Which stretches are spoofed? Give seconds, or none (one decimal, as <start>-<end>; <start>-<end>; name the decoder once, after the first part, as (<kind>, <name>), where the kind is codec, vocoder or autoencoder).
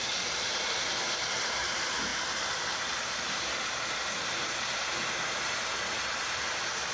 0.0-6.9 (vocoder, BigVGAN v2)